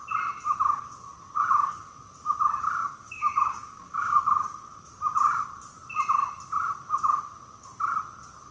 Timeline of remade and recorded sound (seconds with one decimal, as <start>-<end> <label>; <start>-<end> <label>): 0.0-2.8 recorded; 2.8-4.8 remade; 4.8-8.5 recorded